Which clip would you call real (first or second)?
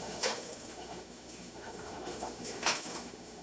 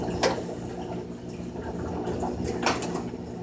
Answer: second